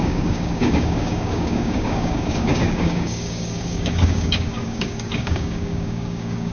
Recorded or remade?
remade